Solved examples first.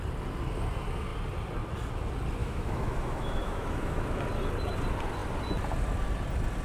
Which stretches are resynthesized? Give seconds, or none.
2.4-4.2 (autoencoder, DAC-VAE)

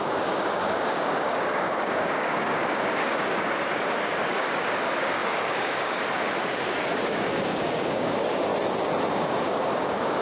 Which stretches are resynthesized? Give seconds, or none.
0.0-8.5 (codec, DAC); 9.1-10.2

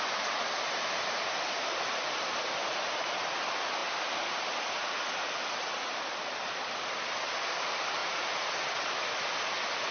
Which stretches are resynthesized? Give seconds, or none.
8.0-8.5 (vocoder, Vocos)

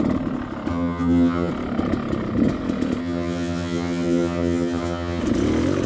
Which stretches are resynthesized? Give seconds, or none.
0.7-1.5 (vocoder, HiFi-GAN); 3.0-5.2